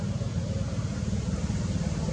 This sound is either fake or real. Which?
fake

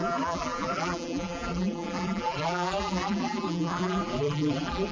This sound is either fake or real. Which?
fake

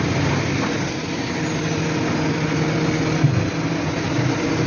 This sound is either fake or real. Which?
real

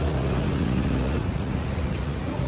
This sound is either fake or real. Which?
fake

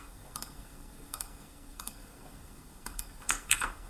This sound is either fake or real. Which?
fake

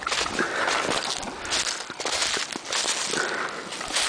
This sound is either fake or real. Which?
real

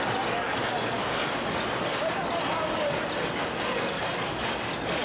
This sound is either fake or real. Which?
real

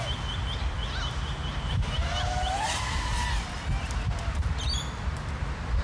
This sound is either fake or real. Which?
real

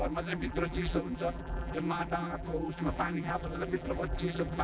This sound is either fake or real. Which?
fake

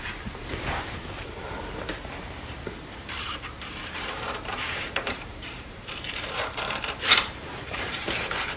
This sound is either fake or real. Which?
fake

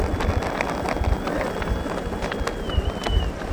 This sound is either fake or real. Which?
real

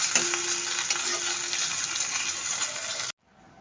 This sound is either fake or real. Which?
real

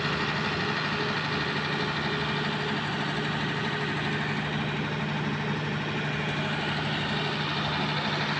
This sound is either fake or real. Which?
real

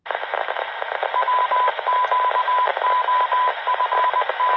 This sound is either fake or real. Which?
real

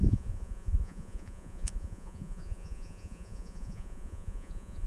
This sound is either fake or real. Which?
fake